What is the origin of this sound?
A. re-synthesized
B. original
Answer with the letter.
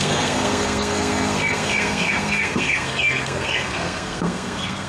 A